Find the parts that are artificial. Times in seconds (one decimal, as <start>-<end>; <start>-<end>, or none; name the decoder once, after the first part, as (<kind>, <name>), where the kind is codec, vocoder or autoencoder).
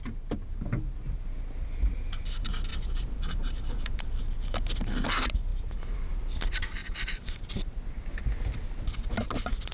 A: 2.7-4.2 (vocoder, BigVGAN v2); 5.5-6.1; 6.8-7.5